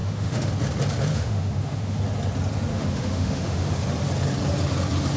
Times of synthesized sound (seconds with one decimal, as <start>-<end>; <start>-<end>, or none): 0.0-0.5; 1.1-2.0; 2.7-3.7

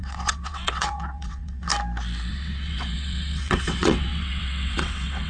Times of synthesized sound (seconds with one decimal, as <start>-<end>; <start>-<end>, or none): 0.0-1.7; 2.3-5.3

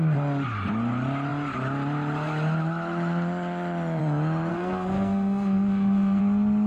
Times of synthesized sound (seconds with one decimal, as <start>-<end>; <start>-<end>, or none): 4.5-6.2

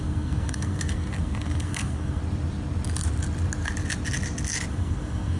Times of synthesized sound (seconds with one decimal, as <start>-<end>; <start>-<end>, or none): 0.0-2.2; 4.7-5.4

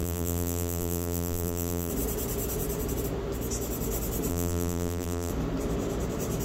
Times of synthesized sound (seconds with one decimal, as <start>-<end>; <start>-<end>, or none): 0.0-1.9; 4.3-5.3

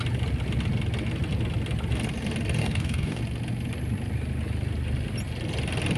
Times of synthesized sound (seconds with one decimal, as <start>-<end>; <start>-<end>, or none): 2.6-3.2

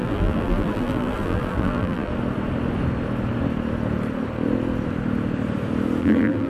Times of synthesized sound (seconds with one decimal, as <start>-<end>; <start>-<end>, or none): 0.0-2.1; 6.0-6.5